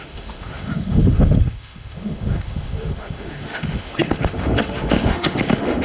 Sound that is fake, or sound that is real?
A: fake